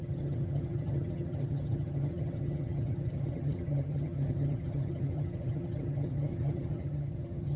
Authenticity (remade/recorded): remade